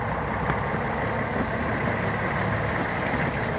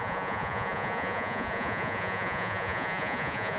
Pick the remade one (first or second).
second